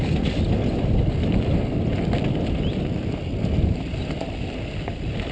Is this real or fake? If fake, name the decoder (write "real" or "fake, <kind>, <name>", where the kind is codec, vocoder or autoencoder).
real